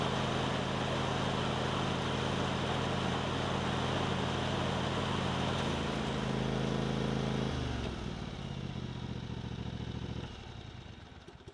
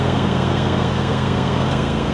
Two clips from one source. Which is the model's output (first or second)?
second